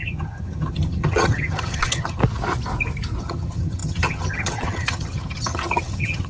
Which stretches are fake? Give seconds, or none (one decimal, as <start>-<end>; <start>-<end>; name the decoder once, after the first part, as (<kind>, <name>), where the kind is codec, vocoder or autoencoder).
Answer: 0.0-2.2 (vocoder, HiFi-GAN); 3.2-6.3